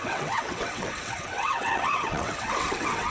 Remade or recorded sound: remade